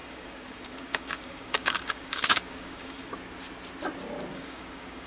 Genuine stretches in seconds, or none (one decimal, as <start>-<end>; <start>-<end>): 3.1-4.3